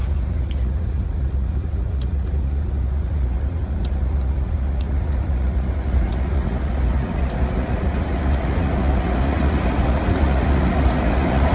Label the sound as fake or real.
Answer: fake